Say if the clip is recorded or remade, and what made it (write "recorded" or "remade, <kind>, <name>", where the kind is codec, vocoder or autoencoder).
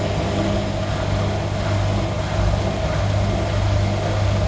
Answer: recorded